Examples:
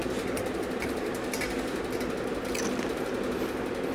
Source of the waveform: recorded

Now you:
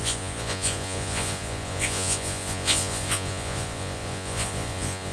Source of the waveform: remade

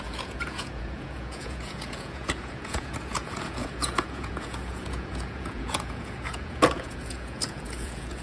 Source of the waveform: remade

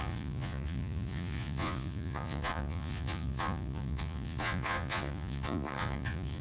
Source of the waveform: remade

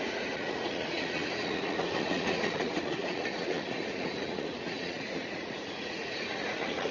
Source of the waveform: remade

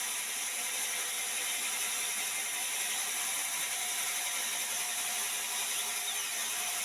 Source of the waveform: recorded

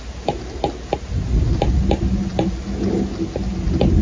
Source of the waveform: recorded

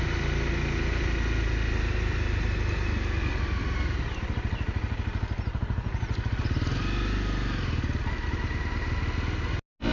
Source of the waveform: recorded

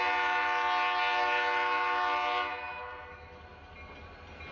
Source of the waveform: recorded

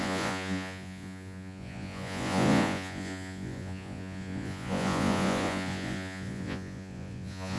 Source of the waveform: remade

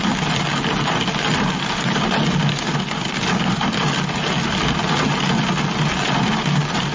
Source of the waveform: recorded